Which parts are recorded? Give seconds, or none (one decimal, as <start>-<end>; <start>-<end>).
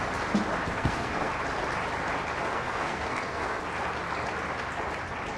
0.0-0.7; 1.3-2.5; 3.6-5.4